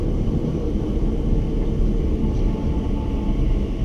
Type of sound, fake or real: real